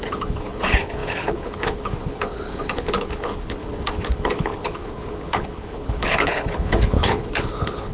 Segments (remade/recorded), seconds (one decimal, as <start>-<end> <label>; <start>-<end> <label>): 0.0-7.9 remade